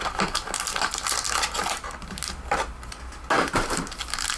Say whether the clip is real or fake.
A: real